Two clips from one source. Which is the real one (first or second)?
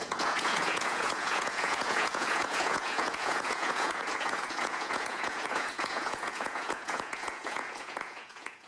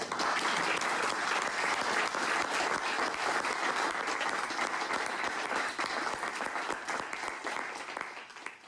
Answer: second